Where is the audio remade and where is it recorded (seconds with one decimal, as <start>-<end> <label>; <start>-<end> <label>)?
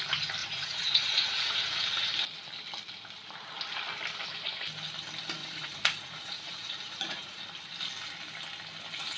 0.0-0.4 recorded; 0.4-1.7 remade; 1.7-5.4 recorded; 5.4-7.4 remade; 7.4-9.2 recorded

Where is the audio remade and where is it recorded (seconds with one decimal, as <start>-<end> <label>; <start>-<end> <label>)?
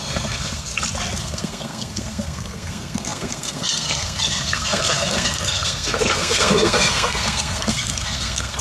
0.0-0.7 remade; 0.7-1.2 recorded; 1.2-8.6 remade